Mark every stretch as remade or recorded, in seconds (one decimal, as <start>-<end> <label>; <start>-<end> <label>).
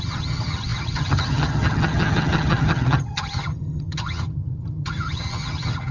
0.0-5.9 remade